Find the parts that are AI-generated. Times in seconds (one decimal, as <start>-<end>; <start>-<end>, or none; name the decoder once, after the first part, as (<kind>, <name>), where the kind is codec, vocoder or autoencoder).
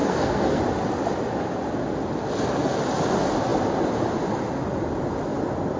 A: 0.0-0.6 (codec, SNAC)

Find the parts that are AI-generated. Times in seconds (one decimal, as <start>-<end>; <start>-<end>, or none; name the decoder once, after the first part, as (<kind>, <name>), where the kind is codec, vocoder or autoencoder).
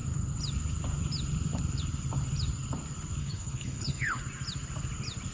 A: 3.2-4.2 (codec, HILCodec)